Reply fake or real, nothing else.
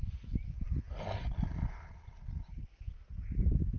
real